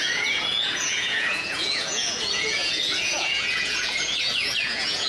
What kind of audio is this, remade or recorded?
remade